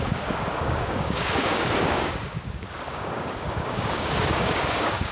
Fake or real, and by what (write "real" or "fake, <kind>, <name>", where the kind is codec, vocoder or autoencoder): fake, codec, DAC